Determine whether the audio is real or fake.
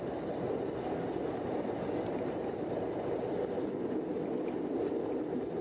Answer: real